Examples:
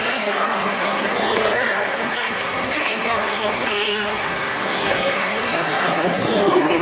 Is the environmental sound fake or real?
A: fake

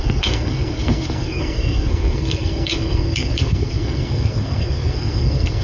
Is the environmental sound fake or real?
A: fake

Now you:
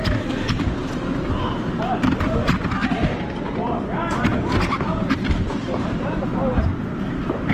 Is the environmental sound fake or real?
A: real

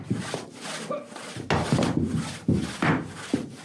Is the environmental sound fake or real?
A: real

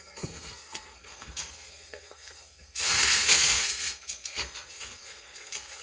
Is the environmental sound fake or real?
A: fake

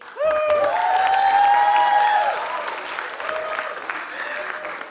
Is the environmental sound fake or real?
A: real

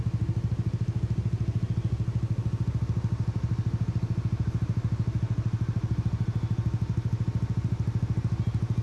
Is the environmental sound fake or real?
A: real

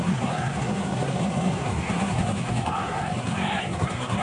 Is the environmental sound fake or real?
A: fake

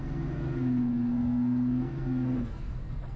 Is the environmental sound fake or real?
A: fake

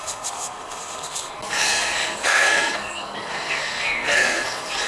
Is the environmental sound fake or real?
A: fake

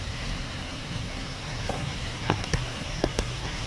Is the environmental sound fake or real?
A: fake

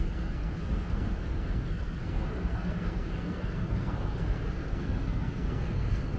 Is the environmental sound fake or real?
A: fake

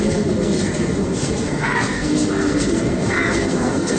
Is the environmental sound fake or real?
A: fake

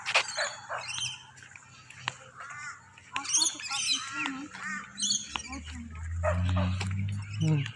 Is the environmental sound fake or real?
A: real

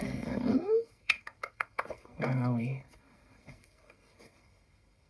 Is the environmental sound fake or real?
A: fake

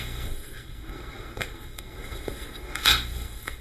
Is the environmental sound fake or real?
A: fake